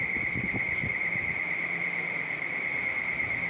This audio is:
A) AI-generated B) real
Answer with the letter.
B